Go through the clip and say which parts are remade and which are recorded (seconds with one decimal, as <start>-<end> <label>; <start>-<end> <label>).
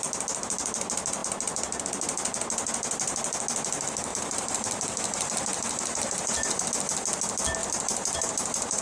0.0-4.1 recorded; 4.1-6.7 remade; 6.7-7.6 recorded; 7.6-8.8 remade